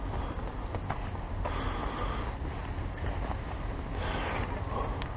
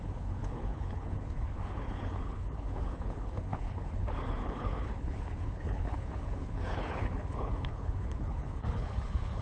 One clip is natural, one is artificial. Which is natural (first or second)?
first